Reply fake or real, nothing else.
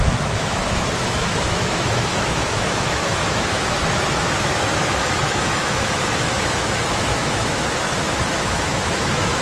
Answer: fake